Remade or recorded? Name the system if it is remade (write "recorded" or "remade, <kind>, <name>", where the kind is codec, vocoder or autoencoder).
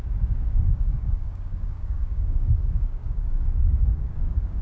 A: remade, codec, DAC